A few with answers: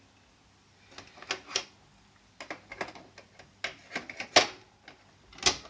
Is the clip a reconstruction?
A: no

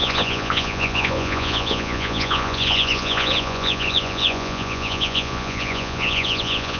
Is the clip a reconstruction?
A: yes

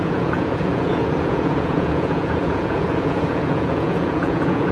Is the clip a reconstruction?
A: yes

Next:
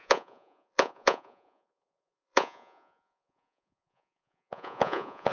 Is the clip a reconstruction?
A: yes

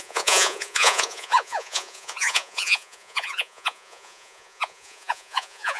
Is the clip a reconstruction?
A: yes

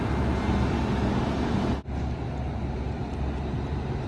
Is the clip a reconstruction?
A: no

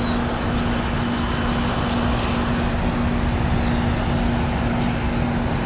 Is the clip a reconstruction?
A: no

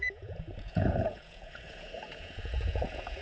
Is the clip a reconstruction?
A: yes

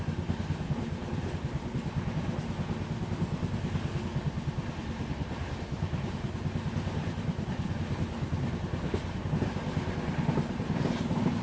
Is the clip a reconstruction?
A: no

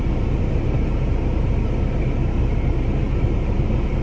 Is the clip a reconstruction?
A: no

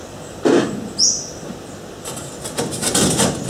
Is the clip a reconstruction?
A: no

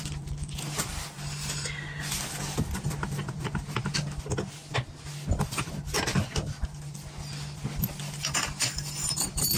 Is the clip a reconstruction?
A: no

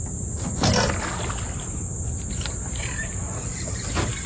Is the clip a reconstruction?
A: no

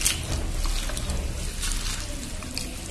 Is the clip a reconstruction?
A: no